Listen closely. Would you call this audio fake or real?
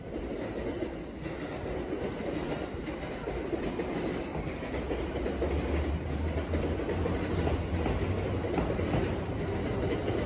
real